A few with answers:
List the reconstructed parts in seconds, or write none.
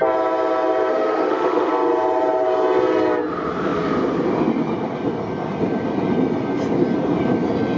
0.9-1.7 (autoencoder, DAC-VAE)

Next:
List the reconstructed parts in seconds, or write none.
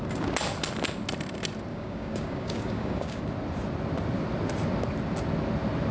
1.7-3.2 (codec, DAC)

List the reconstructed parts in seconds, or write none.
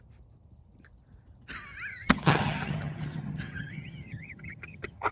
1.9-5.1 (vocoder, HiFi-GAN)